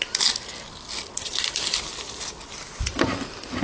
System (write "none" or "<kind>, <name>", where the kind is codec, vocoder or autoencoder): none